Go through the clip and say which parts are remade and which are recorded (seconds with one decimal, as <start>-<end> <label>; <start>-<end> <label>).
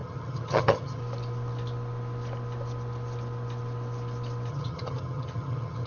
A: 0.0-1.0 remade; 1.0-4.5 recorded; 4.5-5.9 remade